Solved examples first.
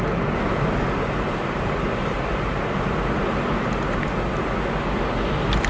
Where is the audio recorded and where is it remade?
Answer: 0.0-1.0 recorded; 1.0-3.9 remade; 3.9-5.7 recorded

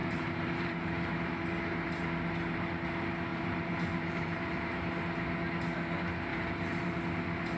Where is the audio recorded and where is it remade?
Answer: 0.0-1.2 remade; 1.2-3.3 recorded; 3.3-4.9 remade; 4.9-6.3 recorded; 6.3-7.0 remade; 7.0-7.6 recorded

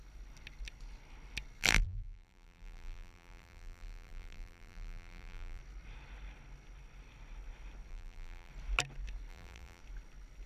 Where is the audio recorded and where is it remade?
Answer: 0.0-1.6 recorded; 1.6-5.6 remade; 5.6-7.9 recorded; 7.9-8.5 remade; 8.5-9.3 recorded; 9.3-9.8 remade; 9.8-10.5 recorded

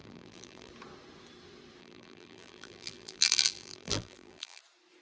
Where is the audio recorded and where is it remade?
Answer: 0.0-0.7 remade; 0.7-1.8 recorded; 1.8-4.6 remade; 4.6-5.0 recorded

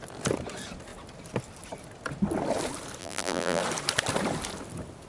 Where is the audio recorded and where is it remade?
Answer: 0.0-3.0 recorded; 3.0-3.6 remade; 3.6-5.1 recorded

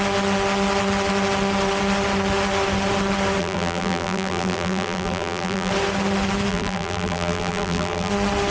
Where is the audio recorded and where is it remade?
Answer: 0.0-3.4 recorded; 3.4-5.7 remade; 5.7-6.5 recorded; 6.5-8.1 remade; 8.1-8.5 recorded

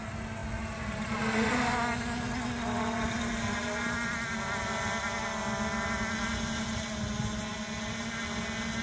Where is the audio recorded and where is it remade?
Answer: 0.0-8.8 recorded

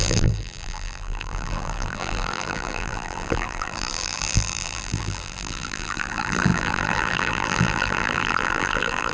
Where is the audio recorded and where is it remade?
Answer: 0.0-9.1 remade